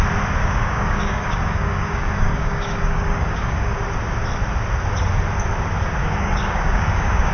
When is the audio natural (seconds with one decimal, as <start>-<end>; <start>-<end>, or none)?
0.0-0.4; 3.8-6.0

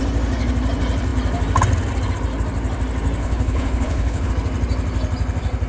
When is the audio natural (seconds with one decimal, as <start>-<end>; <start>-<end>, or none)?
0.0-3.2; 4.3-5.7

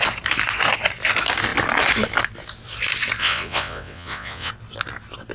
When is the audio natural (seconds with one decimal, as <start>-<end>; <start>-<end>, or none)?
0.0-3.2; 4.5-5.3

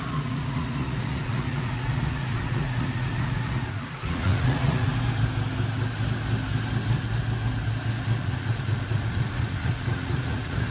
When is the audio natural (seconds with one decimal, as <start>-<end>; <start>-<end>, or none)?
4.9-8.2